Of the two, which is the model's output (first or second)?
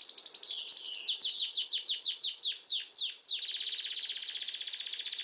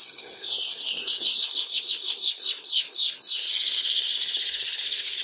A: second